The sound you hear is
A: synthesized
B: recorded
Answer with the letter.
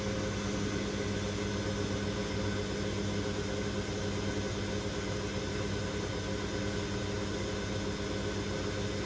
B